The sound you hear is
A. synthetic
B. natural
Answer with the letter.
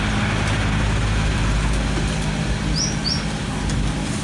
B